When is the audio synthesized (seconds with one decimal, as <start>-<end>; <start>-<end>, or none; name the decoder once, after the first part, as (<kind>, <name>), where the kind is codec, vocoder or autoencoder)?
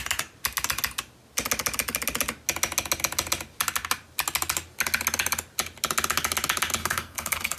6.8-7.6 (codec, SNAC)